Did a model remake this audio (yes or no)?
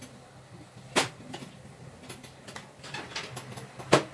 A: no